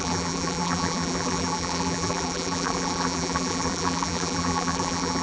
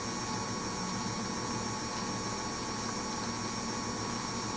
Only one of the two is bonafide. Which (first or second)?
second